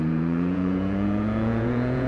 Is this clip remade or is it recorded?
remade